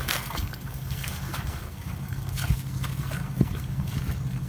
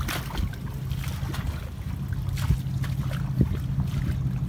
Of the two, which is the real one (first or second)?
second